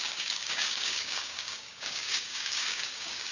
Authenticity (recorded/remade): remade